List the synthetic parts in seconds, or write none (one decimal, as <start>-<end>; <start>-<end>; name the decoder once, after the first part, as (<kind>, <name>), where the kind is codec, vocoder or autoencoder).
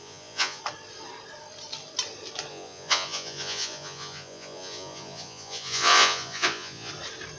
0.0-0.6 (vocoder, Vocos); 2.5-6.9